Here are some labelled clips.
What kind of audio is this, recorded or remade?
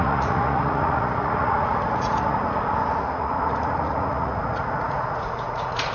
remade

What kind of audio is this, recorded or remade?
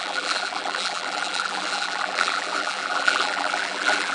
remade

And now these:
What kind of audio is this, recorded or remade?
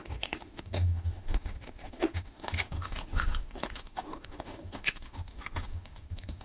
remade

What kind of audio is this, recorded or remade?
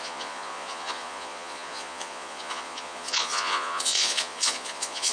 remade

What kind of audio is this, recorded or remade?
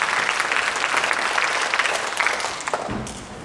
recorded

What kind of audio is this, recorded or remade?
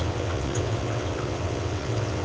remade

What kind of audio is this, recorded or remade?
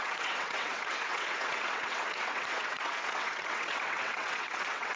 remade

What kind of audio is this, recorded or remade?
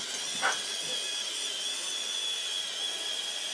recorded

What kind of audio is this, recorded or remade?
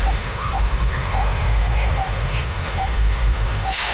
remade